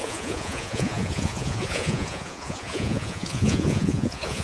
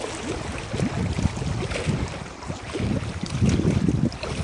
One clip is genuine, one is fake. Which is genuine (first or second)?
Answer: second